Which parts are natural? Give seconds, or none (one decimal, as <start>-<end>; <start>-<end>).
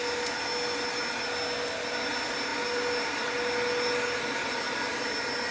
0.0-5.5